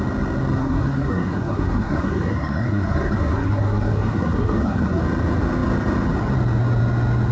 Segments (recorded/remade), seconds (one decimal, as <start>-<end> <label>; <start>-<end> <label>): 0.0-0.6 recorded; 0.6-5.0 remade; 5.0-7.3 recorded